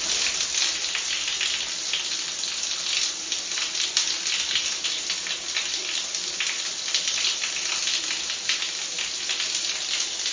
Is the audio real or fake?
real